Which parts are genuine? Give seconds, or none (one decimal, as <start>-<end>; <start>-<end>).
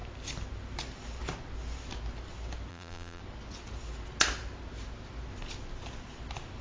0.0-2.7; 3.2-6.6